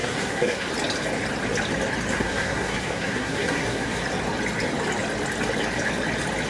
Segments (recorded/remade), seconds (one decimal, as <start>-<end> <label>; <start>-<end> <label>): 0.0-0.7 remade; 0.7-2.1 recorded; 2.1-4.0 remade; 4.0-6.5 recorded